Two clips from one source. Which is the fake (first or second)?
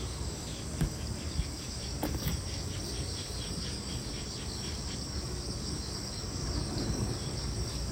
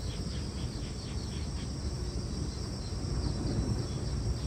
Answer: first